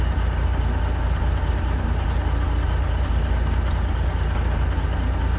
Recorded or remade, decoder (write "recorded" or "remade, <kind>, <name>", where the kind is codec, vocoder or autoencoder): recorded